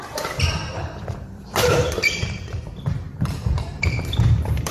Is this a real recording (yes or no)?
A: no